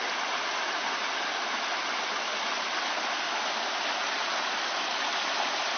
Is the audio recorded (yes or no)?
yes